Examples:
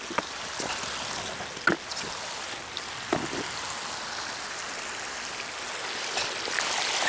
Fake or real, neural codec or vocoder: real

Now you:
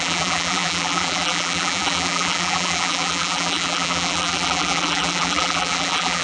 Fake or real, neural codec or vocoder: fake, vocoder, BigVGAN v2